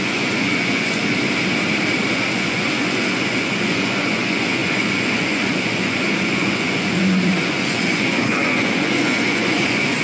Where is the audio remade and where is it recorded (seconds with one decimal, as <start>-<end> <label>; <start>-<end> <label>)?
0.0-1.0 remade; 1.0-2.1 recorded; 2.1-10.0 remade